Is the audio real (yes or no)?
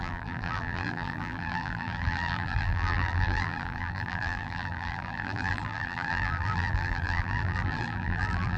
no